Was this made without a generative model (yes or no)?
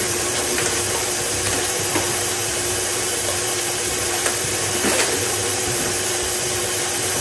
no